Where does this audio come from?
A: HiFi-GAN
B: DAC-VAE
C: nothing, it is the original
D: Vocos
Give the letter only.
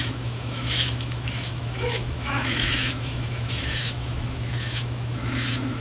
B